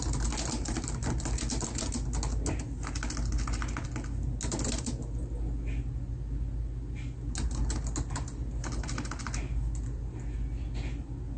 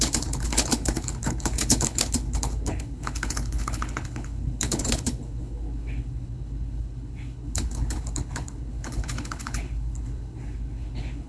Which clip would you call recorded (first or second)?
first